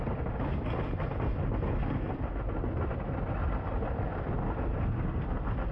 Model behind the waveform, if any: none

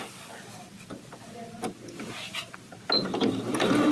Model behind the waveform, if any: none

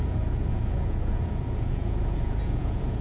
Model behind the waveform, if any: vocoder, Vocos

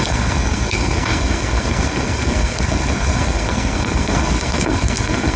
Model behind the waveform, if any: codec, SNAC